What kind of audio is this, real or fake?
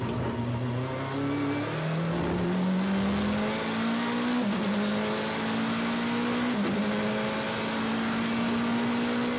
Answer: real